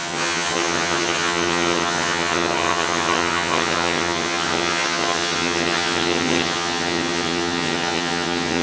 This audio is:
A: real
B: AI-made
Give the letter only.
B